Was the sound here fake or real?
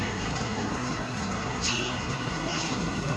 fake